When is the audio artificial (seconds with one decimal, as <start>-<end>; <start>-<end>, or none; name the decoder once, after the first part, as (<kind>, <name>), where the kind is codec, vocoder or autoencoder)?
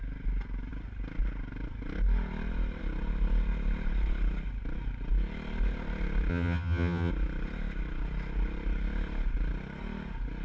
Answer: 6.3-7.1 (vocoder, HiFi-GAN)